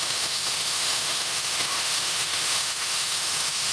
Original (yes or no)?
no